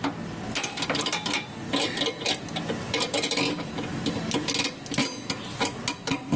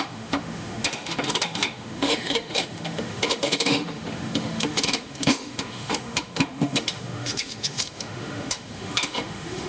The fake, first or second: second